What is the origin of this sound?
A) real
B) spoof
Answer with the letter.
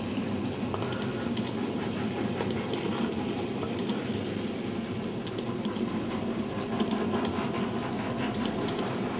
A